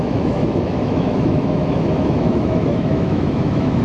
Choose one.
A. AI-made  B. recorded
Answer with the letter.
A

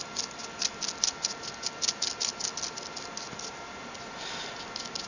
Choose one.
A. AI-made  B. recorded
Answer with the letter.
B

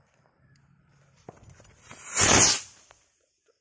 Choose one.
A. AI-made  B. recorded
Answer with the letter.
B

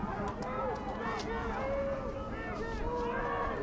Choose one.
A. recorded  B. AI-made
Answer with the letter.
A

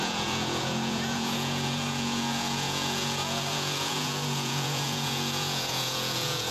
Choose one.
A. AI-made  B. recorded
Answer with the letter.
A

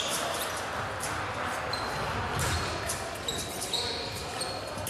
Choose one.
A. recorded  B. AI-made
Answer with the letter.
A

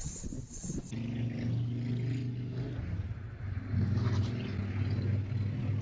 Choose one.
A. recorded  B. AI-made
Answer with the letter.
A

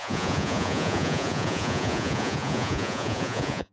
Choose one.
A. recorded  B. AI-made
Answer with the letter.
B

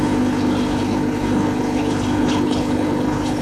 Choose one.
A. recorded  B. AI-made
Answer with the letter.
B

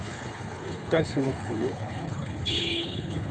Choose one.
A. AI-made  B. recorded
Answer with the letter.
A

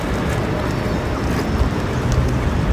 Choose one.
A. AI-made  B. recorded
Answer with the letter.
B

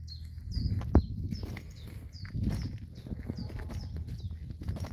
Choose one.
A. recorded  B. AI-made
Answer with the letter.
A